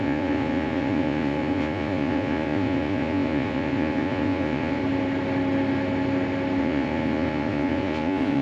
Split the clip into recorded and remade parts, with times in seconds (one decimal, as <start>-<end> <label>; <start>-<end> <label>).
0.0-4.8 remade; 4.8-6.6 recorded; 6.6-8.4 remade